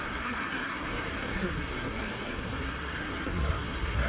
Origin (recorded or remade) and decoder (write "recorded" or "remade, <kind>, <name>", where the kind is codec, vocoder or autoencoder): remade, codec, SNAC